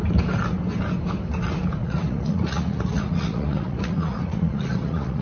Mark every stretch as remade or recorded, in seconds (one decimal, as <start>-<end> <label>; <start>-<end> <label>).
0.0-1.8 recorded; 1.8-5.2 remade